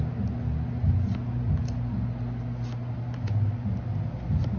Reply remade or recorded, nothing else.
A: recorded